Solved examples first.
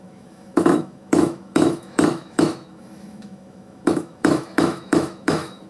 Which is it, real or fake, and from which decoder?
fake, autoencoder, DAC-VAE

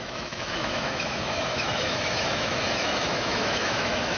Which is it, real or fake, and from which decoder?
fake, autoencoder, DAC-VAE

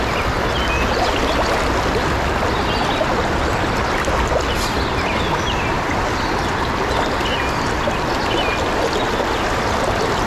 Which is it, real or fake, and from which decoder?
real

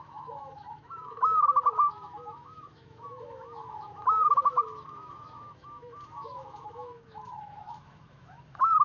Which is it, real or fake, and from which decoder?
fake, autoencoder, DAC-VAE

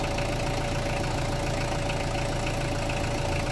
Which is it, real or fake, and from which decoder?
real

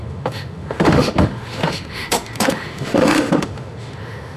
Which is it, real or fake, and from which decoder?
fake, autoencoder, DAC-VAE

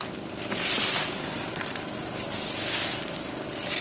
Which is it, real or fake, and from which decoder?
real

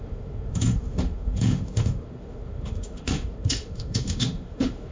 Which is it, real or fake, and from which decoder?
fake, autoencoder, DAC-VAE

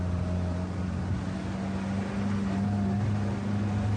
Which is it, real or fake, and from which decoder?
real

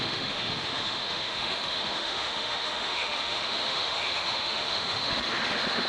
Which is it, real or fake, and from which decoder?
fake, autoencoder, DAC-VAE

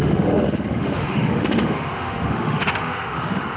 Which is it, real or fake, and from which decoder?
fake, autoencoder, DAC-VAE